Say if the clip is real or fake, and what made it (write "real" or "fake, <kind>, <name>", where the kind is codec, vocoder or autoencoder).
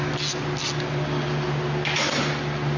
real